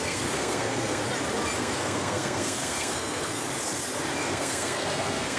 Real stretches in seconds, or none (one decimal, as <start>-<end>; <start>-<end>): 1.0-1.6; 3.4-4.2